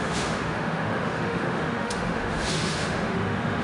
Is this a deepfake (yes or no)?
yes